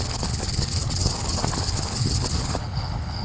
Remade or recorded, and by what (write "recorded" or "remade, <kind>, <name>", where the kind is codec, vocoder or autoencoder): remade, codec, HILCodec